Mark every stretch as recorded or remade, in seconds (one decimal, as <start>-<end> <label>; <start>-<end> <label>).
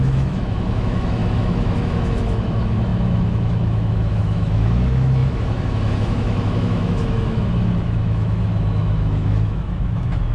0.0-10.3 remade